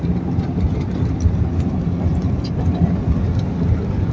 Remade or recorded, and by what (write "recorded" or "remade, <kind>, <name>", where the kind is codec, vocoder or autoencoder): recorded